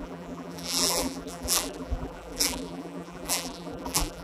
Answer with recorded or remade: remade